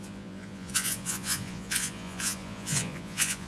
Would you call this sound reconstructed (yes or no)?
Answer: yes